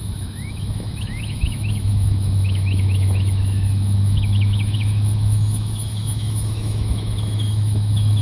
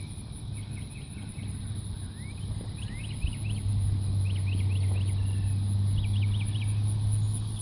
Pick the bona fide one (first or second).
second